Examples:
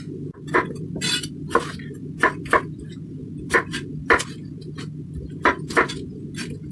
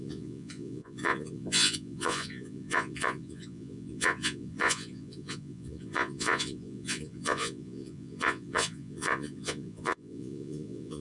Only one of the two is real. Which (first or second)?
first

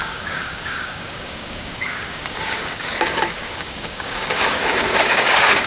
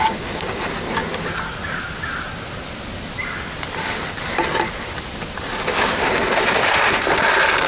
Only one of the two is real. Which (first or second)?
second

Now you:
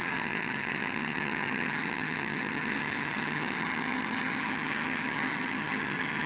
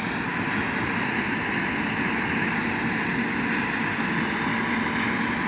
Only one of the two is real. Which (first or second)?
second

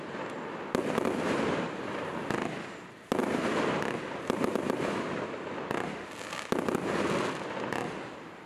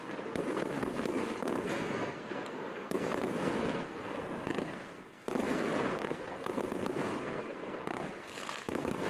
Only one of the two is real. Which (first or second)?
first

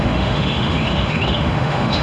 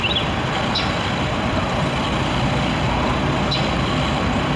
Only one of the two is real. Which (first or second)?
second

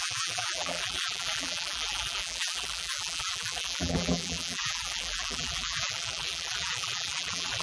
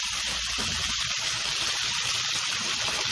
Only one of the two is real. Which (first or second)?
second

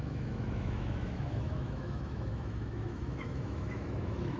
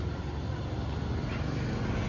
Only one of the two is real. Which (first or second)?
second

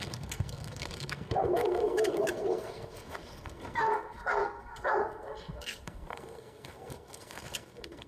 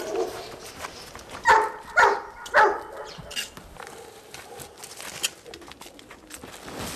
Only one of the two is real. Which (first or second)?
second